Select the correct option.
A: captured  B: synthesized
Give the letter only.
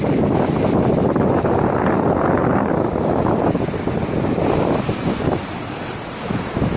A